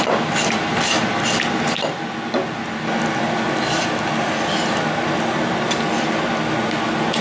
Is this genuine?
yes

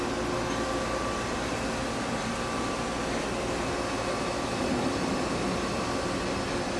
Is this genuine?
yes